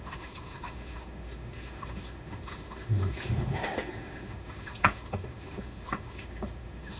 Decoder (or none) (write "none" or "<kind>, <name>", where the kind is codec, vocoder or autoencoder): autoencoder, DAC-VAE